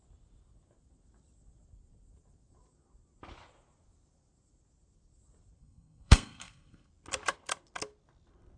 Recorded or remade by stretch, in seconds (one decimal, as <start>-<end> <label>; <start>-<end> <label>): 0.0-5.6 recorded; 5.6-6.9 remade; 6.9-8.6 recorded